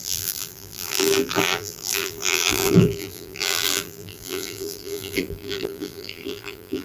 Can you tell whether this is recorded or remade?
remade